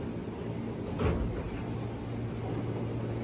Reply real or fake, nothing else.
real